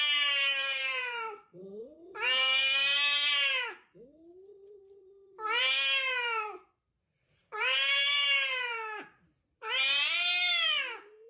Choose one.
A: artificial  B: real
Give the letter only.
A